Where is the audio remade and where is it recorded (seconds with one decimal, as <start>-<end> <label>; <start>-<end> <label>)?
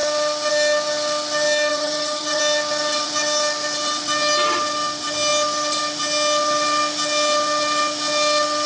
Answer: 0.0-1.7 recorded; 1.7-2.4 remade; 2.4-8.7 recorded